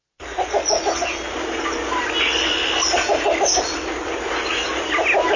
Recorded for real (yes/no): yes